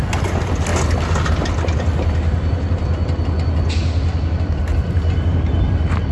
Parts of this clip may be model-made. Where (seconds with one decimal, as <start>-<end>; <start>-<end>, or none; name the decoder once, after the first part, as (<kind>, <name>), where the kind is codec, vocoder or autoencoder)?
none